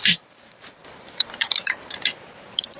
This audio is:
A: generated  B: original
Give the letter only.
A